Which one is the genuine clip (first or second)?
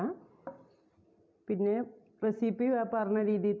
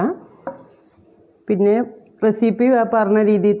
second